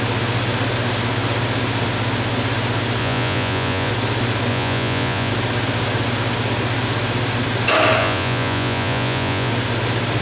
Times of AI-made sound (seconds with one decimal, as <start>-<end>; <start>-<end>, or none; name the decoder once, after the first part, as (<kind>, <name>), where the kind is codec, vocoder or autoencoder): 3.0-3.9 (vocoder, Vocos); 4.5-5.3; 8.0-9.5

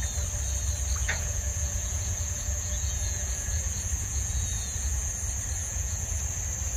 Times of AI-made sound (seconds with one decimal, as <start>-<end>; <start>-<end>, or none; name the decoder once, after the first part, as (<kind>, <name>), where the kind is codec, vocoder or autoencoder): 1.0-5.1 (vocoder, Vocos); 5.6-6.2

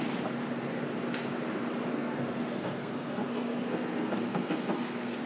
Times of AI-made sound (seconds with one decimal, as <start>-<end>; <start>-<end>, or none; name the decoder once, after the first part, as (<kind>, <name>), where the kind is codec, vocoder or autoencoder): 1.9-5.2 (codec, SNAC)

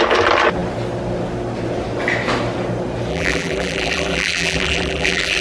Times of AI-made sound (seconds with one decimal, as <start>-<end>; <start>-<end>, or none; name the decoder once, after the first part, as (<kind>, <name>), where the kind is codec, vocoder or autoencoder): 3.1-5.4 (vocoder, BigVGAN v2)

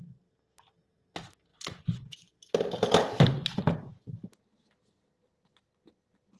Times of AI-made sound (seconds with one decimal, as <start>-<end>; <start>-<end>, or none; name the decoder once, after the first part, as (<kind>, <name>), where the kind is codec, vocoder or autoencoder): 1.5-2.3 (vocoder, Vocos)

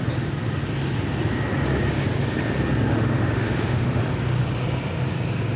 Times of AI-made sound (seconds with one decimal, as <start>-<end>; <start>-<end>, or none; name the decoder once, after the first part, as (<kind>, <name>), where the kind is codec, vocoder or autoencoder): 2.9-4.0 (autoencoder, DAC-VAE)

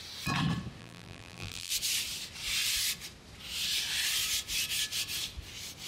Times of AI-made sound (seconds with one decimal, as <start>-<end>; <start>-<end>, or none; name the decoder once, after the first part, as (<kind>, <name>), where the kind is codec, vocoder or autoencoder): 0.8-1.7 (vocoder, BigVGAN v2)